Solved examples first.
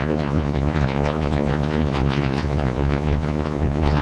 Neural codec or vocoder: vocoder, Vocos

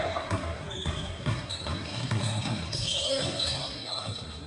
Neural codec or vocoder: codec, SNAC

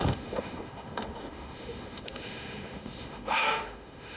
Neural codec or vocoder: autoencoder, DAC-VAE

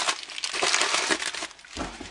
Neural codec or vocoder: none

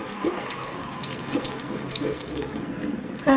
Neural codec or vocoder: codec, SNAC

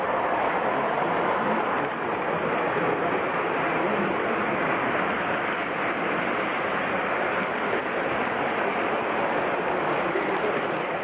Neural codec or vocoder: vocoder, BigVGAN v2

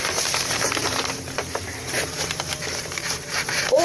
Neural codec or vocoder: vocoder, BigVGAN v2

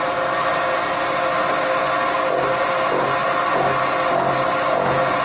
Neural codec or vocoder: none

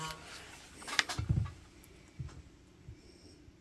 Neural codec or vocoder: none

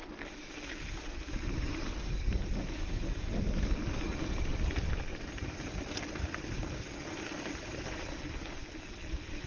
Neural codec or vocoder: none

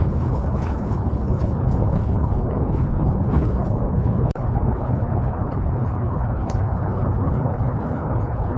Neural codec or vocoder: codec, HILCodec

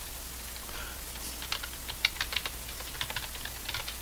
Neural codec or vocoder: none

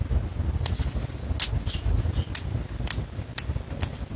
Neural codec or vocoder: none